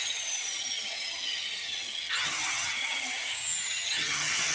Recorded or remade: remade